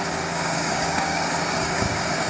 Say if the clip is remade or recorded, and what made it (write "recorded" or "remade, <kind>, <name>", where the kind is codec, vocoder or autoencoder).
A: remade, codec, DAC